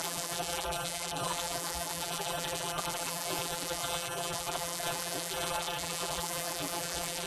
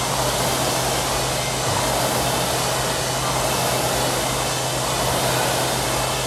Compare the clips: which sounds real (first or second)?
second